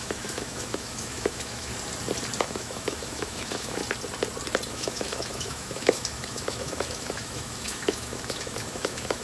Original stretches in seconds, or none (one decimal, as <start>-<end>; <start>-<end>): 1.7-2.4; 3.8-4.7